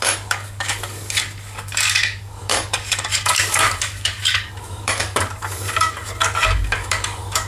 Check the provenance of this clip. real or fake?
fake